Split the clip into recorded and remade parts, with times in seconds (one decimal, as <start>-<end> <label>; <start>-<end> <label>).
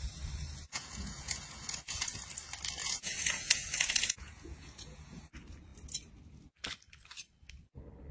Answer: 0.0-0.7 recorded; 0.7-2.2 remade; 2.2-2.8 recorded; 2.8-5.2 remade; 5.2-8.1 recorded